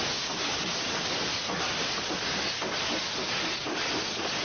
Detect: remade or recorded recorded